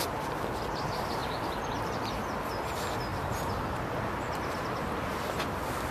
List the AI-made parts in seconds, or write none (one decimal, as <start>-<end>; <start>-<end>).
none